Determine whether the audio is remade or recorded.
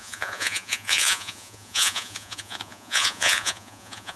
remade